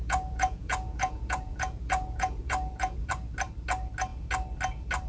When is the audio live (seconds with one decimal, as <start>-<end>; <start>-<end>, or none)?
3.1-5.1